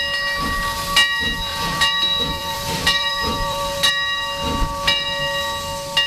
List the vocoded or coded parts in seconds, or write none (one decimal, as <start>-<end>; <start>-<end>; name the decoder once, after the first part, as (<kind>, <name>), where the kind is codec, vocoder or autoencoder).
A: 1.5-3.9 (vocoder, BigVGAN v2)